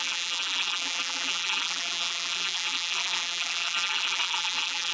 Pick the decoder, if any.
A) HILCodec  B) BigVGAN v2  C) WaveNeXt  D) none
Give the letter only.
B